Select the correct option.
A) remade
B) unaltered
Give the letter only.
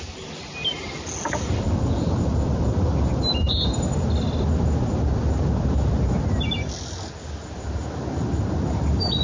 B